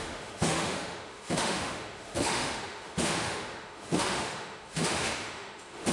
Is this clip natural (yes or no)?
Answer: no